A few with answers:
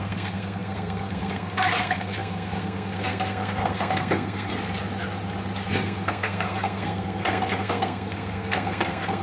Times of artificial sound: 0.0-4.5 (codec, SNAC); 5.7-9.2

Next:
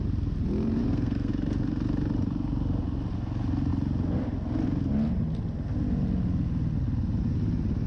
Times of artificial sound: 0.8-1.3 (codec, SNAC)

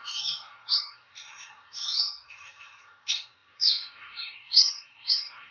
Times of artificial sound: 0.0-5.5 (codec, SNAC)

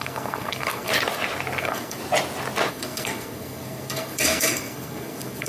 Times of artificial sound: 0.0-0.9 (codec, SNAC); 1.6-2.0; 2.7-5.5

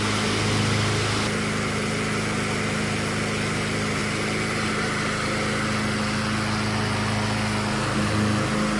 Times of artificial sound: none

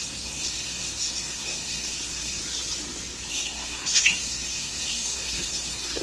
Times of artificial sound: 0.0-2.4 (codec, SNAC); 3.3-6.0